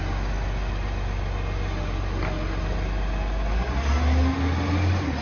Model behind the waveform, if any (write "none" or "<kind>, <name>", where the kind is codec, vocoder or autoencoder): none